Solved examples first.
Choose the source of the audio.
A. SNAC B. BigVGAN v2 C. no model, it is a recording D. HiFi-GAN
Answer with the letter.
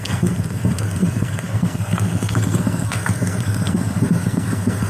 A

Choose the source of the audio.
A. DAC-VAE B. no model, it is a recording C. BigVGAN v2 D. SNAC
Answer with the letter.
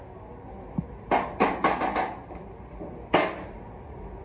B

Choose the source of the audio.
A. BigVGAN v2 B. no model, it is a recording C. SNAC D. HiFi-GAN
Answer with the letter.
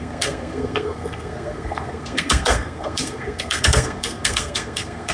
C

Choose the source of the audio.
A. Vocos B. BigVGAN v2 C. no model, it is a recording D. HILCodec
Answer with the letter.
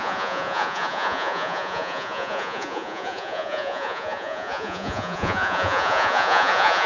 A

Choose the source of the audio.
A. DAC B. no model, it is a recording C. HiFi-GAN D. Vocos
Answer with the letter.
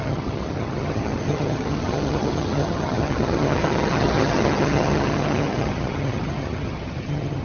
C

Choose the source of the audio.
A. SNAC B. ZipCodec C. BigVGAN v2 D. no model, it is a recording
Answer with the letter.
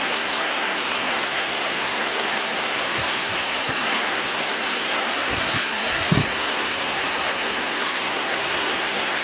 A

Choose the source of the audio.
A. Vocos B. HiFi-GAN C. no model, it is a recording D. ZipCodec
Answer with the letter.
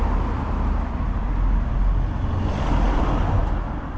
C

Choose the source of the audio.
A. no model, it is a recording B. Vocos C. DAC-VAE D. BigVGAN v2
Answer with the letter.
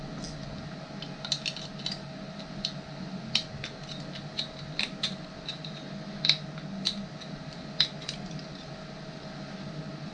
A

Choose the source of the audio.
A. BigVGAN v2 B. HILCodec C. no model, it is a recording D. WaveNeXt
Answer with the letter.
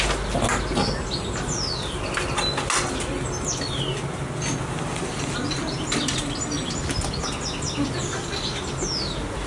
C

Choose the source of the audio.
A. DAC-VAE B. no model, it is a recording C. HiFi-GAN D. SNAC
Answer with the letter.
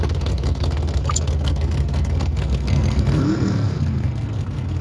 D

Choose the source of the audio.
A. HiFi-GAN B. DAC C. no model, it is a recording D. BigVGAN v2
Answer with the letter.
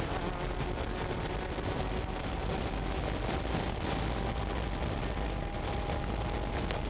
C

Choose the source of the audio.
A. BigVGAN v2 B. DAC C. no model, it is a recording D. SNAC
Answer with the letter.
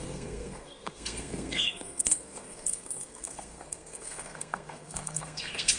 D